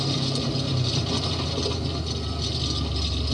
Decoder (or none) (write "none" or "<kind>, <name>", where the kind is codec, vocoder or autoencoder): none